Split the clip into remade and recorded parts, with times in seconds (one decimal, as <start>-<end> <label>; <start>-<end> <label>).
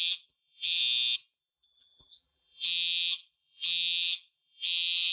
0.0-0.8 remade; 0.8-1.4 recorded; 1.4-5.1 remade